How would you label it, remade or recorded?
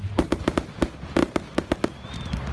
recorded